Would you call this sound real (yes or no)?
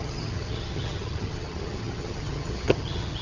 no